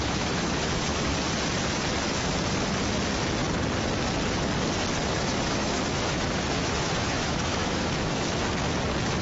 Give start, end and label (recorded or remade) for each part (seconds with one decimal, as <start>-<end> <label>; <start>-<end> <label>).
0.0-1.1 remade; 1.1-5.1 recorded; 5.1-8.3 remade; 8.3-9.2 recorded